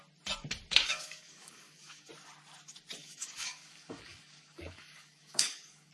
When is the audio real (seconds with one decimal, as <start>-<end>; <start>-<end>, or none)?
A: 0.0-0.7; 2.1-3.0